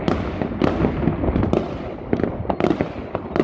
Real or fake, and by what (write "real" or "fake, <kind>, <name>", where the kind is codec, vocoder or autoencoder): real